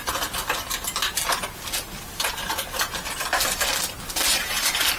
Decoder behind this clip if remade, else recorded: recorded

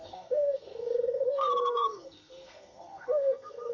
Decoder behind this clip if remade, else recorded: remade, codec, SNAC